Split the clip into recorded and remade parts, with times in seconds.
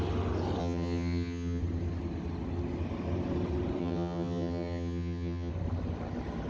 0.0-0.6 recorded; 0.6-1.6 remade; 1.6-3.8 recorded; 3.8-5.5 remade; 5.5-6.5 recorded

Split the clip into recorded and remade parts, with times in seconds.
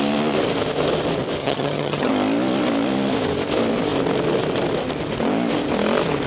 0.0-1.4 recorded; 1.4-2.1 remade; 2.1-6.3 recorded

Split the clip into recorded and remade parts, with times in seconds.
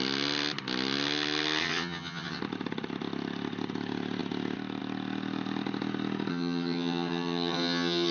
0.0-1.6 recorded; 1.6-2.4 remade; 2.4-6.3 recorded; 6.3-8.1 remade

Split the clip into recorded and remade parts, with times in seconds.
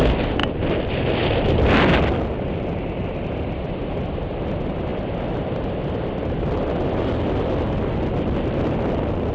0.0-9.3 recorded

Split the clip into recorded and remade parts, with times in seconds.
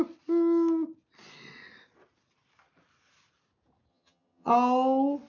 0.0-3.9 recorded; 3.9-4.5 remade; 4.5-5.3 recorded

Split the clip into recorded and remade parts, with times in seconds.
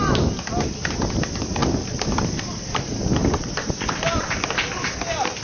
0.0-5.4 recorded